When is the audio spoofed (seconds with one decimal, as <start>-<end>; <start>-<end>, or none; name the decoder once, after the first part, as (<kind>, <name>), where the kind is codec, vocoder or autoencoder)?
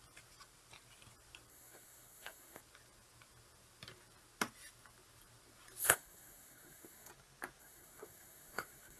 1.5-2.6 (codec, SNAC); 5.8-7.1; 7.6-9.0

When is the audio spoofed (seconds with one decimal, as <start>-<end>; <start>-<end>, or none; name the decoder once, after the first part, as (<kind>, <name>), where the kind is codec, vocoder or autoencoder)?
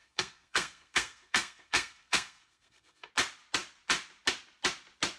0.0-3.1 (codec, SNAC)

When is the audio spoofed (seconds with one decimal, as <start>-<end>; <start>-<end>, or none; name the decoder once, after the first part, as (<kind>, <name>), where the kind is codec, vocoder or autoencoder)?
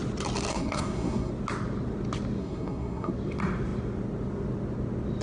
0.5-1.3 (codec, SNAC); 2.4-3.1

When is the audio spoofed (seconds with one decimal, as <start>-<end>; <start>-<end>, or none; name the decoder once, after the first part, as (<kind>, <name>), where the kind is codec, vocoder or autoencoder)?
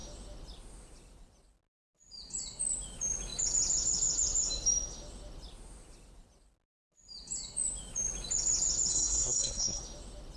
8.9-9.8 (codec, SNAC)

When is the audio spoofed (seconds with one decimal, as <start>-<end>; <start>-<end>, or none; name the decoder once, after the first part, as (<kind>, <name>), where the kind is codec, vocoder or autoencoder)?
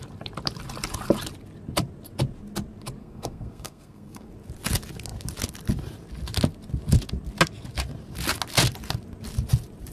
3.0-4.3 (codec, SNAC)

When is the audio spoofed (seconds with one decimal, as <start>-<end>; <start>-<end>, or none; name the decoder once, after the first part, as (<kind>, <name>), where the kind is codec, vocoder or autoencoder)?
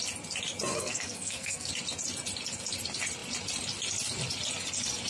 0.7-1.7 (codec, SNAC)